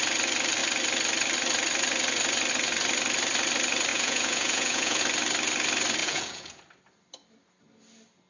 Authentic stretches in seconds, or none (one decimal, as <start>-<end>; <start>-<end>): 0.0-3.9; 5.0-6.0; 6.6-8.3